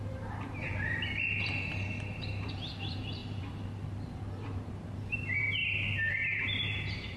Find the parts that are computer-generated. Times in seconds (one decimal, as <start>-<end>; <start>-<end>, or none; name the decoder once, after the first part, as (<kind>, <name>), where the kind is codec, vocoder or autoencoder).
0.0-5.6 (vocoder, BigVGAN v2); 6.1-7.2